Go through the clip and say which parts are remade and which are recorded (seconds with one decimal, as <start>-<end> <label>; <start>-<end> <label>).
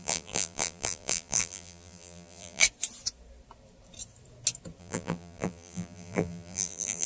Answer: 0.0-2.6 remade; 2.6-4.8 recorded; 4.8-7.1 remade